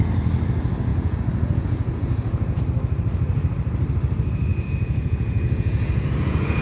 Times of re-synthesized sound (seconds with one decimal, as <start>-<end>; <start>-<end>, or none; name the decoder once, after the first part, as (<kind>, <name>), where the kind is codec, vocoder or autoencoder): 0.9-2.6 (vocoder, Vocos); 4.5-6.6